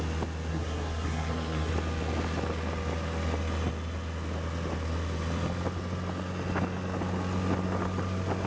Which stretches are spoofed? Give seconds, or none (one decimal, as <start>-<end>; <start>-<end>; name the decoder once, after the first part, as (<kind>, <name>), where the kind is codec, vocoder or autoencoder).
0.5-1.7 (codec, SNAC)